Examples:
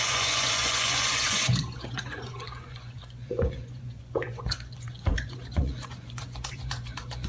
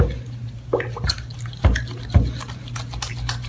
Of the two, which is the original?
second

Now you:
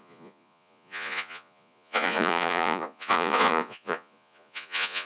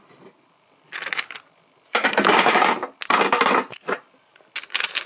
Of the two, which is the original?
second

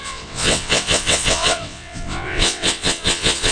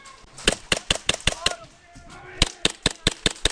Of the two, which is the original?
second